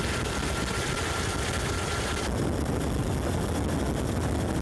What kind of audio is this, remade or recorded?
recorded